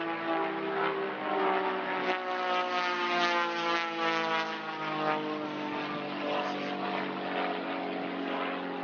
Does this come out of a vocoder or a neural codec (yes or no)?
no